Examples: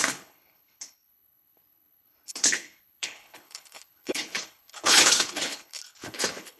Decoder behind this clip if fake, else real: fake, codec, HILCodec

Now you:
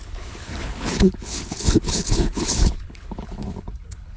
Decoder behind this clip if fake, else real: fake, codec, HILCodec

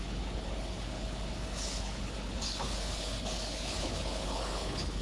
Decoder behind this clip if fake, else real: fake, codec, HILCodec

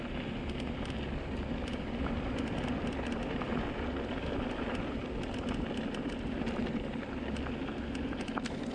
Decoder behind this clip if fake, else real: real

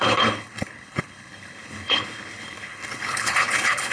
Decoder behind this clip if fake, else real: fake, codec, HILCodec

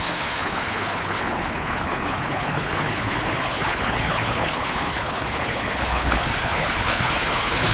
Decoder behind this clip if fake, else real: fake, codec, HILCodec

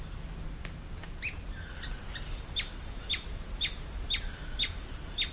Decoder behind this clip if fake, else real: real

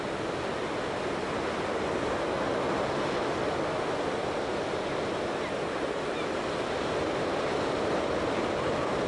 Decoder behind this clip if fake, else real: real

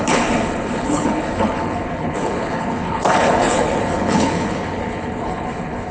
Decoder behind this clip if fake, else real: fake, codec, HILCodec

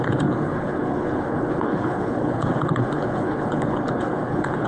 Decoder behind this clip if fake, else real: fake, codec, HILCodec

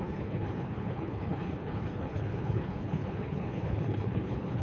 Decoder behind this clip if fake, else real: fake, codec, HILCodec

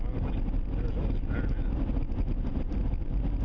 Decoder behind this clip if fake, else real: real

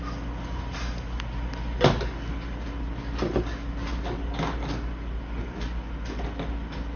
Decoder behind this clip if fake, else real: real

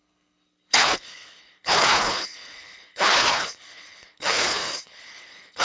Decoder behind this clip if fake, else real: fake, codec, HILCodec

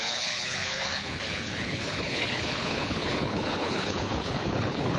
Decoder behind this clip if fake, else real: fake, codec, HILCodec